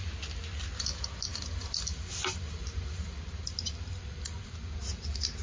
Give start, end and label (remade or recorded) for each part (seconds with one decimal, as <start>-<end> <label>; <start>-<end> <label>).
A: 0.0-1.3 recorded; 1.3-4.5 remade; 4.5-5.4 recorded